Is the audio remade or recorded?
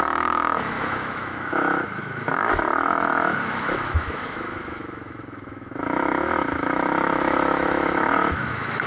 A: remade